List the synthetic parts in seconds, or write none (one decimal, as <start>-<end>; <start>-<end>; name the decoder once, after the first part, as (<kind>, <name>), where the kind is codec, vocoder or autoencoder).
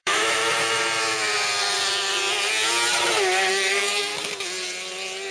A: 0.0-0.4 (autoencoder, DAC-VAE); 3.5-4.1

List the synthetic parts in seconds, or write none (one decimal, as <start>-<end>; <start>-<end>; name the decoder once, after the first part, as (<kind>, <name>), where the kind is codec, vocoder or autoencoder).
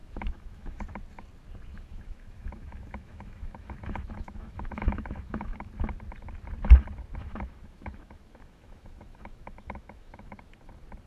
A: 0.0-0.8 (autoencoder, DAC-VAE); 1.7-5.7; 7.2-10.4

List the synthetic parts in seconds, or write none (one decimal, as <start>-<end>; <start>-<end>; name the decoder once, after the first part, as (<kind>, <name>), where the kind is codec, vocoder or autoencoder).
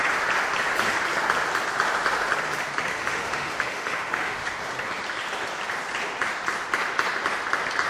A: 2.9-4.4 (autoencoder, DAC-VAE)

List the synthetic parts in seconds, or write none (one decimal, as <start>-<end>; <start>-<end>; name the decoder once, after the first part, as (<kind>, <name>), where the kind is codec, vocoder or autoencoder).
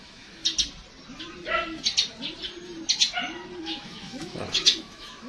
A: 0.0-0.4 (autoencoder, DAC-VAE); 3.6-5.3